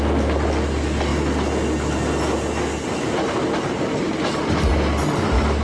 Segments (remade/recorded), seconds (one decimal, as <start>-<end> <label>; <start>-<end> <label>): 0.0-5.6 recorded